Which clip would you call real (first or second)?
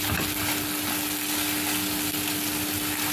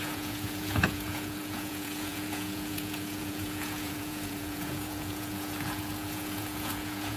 first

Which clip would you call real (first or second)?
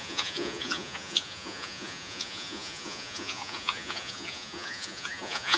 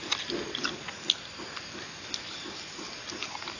second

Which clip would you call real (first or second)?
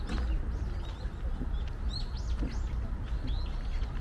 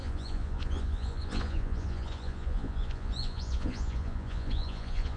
first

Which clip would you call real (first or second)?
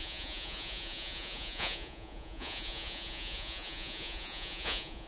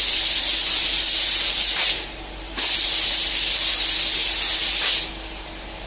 second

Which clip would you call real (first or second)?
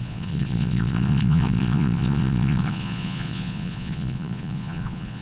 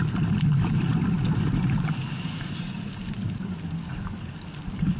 second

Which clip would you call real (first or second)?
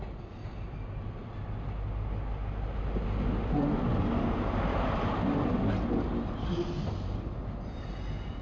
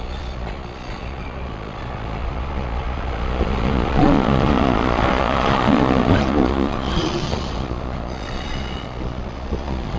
first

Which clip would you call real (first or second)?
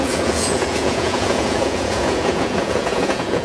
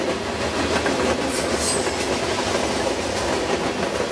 second